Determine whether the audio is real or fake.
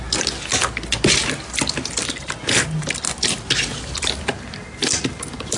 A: real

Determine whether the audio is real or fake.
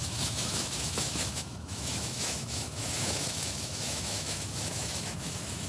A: fake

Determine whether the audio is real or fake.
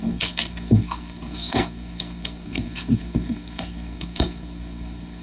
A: fake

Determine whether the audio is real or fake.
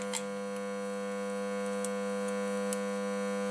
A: real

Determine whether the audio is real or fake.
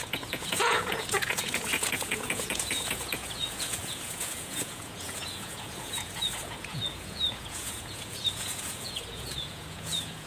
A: fake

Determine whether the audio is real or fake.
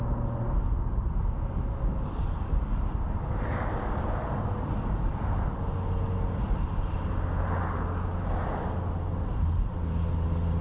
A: real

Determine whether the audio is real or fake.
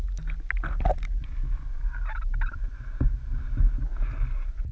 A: real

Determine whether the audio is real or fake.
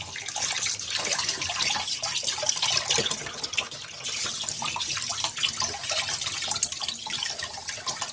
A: real